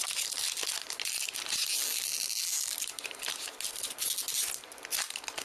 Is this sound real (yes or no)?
yes